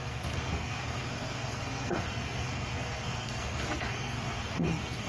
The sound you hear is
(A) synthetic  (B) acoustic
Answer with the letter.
A